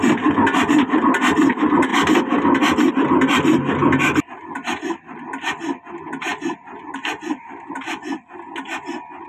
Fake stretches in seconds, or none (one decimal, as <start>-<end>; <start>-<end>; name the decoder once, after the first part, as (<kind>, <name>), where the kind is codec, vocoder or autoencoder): none